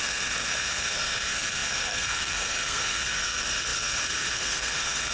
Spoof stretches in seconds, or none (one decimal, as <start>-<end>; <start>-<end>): 0.0-5.1